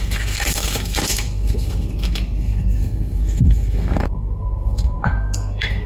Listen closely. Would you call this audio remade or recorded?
remade